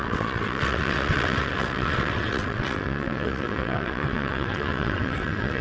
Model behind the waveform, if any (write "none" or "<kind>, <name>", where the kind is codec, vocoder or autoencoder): vocoder, WaveNeXt